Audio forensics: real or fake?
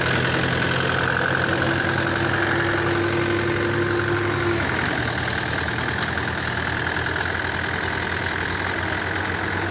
real